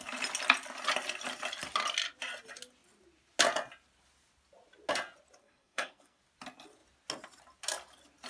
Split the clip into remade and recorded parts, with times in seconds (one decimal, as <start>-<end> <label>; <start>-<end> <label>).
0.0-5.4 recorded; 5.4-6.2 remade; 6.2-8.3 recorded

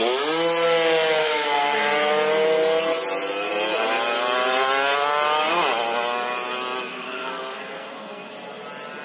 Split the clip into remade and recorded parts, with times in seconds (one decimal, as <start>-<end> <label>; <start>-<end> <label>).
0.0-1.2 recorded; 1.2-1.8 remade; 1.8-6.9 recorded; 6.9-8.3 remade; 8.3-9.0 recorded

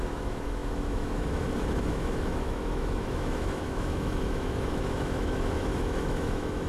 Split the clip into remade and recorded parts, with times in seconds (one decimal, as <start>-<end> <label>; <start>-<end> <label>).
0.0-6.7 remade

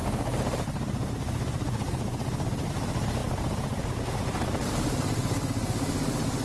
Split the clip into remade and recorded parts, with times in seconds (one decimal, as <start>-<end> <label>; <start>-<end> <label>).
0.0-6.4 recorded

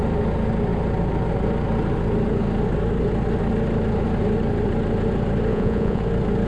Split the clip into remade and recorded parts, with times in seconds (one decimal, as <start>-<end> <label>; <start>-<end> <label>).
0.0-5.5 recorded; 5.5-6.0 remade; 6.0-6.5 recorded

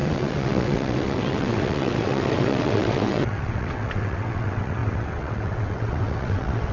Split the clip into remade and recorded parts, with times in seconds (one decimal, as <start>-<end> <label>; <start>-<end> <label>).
0.0-6.7 remade